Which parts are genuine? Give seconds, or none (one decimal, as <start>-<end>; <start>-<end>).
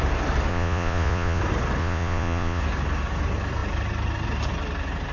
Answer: 0.0-0.5; 1.4-1.8; 2.6-5.1